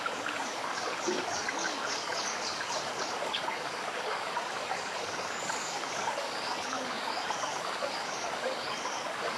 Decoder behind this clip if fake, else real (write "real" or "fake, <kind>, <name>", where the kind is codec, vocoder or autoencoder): fake, codec, DAC